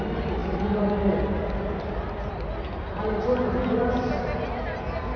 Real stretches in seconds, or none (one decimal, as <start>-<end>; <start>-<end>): 0.0-5.2